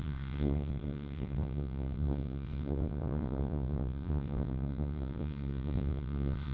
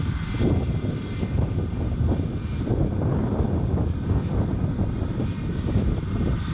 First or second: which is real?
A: second